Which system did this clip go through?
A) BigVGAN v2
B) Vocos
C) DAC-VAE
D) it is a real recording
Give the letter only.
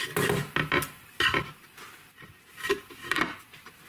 D